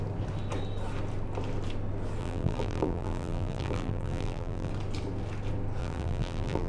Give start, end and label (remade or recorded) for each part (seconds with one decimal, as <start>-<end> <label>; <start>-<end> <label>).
0.0-2.2 recorded; 2.2-4.7 remade; 4.7-5.8 recorded; 5.8-6.7 remade